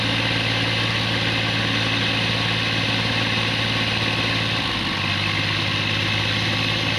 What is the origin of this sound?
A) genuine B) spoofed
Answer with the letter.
A